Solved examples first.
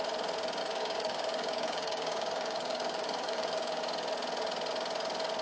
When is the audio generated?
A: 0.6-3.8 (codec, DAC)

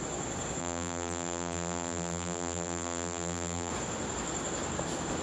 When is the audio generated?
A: 0.6-3.7 (vocoder, BigVGAN v2)

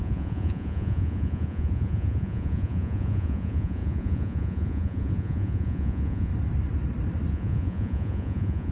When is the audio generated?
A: 0.0-6.3 (vocoder, Vocos); 7.3-8.7

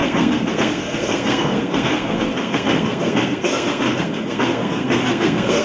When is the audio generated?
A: 0.0-5.6 (codec, SNAC)

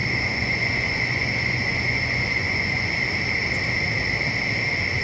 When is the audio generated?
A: 0.0-3.0 (vocoder, Vocos)

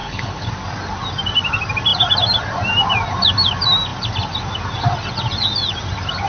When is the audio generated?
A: 0.0-0.5 (codec, HILCodec)